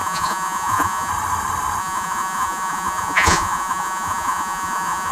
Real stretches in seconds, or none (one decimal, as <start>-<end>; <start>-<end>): 1.1-1.8